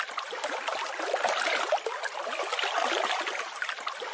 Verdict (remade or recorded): recorded